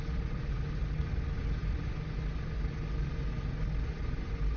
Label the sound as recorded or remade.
recorded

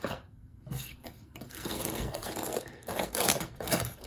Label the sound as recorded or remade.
remade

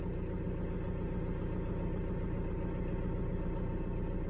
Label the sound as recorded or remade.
recorded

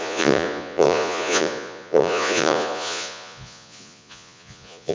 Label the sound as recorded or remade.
remade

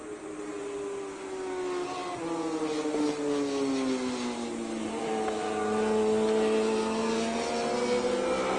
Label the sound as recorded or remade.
recorded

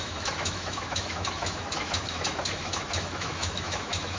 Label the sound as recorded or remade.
remade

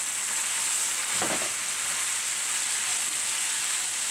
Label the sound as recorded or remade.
recorded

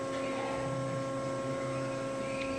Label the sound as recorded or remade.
recorded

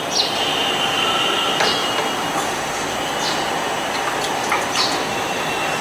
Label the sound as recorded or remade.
recorded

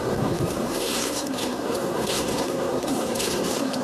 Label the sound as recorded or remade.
remade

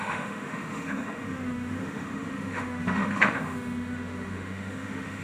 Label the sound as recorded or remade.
remade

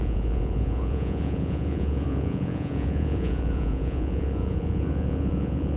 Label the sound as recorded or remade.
remade